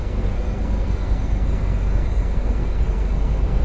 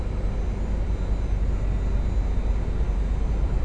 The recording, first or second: second